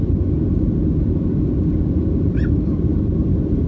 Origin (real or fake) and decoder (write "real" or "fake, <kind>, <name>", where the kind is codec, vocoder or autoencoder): real